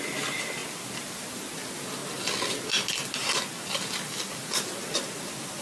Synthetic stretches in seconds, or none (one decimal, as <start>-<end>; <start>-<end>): none